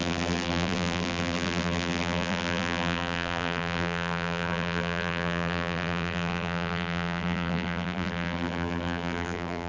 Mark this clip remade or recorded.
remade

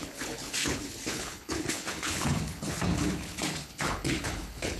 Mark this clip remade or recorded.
remade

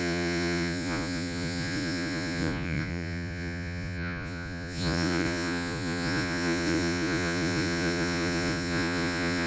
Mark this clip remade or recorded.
remade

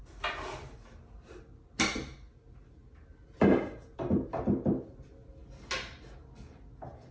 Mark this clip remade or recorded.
recorded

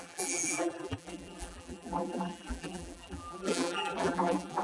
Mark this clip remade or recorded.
remade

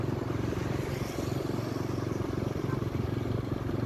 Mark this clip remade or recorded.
recorded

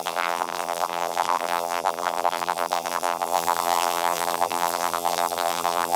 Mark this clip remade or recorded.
remade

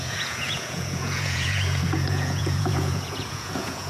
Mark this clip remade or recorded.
remade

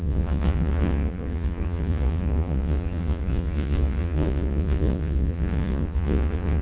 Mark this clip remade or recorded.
remade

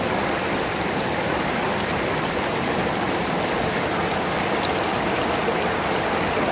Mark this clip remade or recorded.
recorded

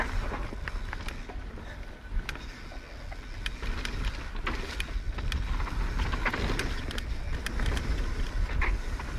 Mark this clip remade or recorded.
recorded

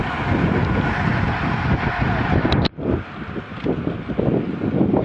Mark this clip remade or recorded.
recorded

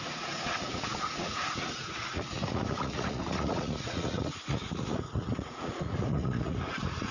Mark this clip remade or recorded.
remade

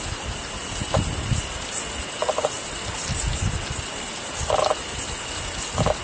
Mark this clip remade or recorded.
recorded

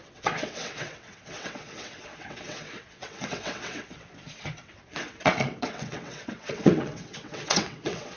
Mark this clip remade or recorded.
remade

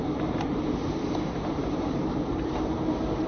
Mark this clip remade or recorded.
remade